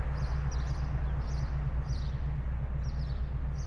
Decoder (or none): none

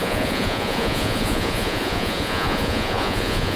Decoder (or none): vocoder, Vocos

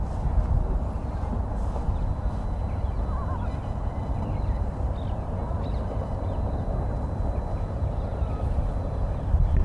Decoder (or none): none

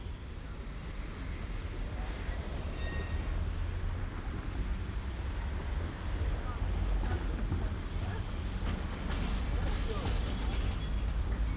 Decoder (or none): none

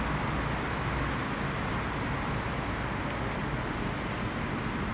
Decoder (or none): none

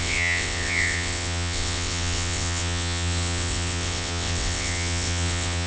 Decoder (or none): vocoder, WaveNeXt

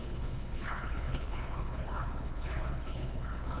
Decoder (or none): codec, HILCodec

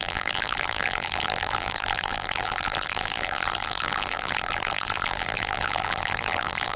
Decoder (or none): vocoder, BigVGAN v2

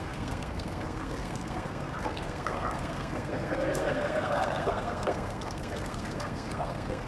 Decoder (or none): codec, SNAC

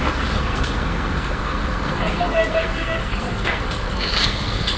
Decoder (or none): codec, SNAC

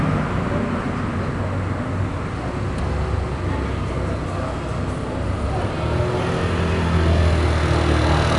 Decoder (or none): none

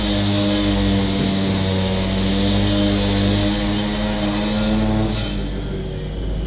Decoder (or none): none